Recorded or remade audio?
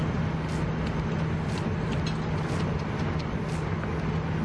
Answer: recorded